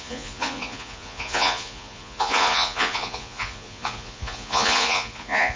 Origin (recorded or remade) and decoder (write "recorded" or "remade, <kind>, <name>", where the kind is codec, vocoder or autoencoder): remade, vocoder, Vocos